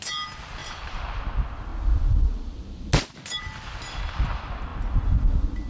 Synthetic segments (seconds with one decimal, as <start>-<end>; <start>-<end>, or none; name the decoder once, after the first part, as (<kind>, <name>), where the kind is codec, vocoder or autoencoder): none